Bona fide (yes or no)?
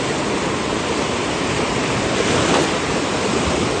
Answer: yes